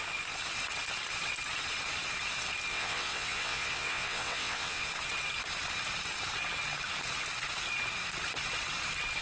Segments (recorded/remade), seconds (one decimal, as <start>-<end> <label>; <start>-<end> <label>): 0.0-2.7 recorded; 2.7-4.9 remade; 4.9-9.2 recorded

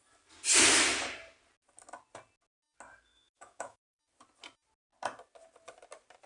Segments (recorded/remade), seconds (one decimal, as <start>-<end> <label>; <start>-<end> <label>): 0.0-3.1 recorded; 3.1-4.0 remade; 4.0-6.3 recorded

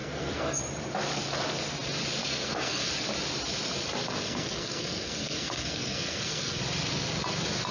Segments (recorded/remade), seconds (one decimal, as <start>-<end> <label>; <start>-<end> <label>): 0.0-0.6 remade; 0.6-2.2 recorded; 2.2-2.9 remade; 2.9-4.0 recorded; 4.0-6.6 remade; 6.6-7.7 recorded